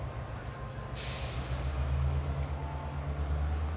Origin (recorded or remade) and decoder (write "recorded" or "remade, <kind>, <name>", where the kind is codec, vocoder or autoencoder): recorded